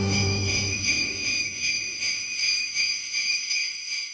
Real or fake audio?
fake